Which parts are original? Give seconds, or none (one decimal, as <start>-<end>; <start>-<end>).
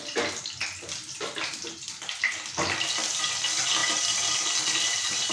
0.0-5.3